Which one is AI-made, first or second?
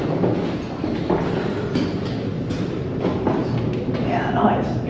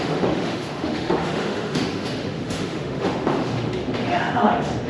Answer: second